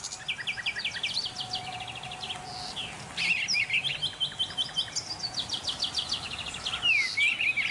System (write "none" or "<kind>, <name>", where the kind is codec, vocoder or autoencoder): none